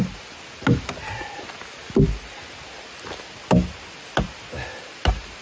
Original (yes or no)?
yes